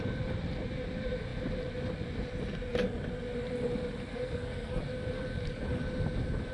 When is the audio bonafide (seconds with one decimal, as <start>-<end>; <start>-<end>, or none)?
0.0-4.1; 4.8-6.5